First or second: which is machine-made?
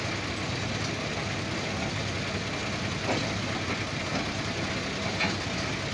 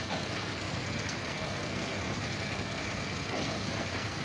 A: second